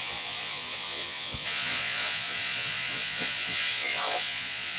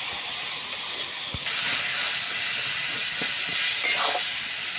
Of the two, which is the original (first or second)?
second